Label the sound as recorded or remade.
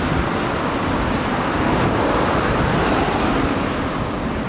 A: recorded